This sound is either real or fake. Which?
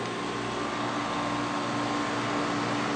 real